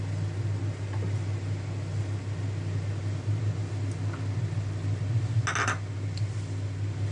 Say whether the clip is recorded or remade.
recorded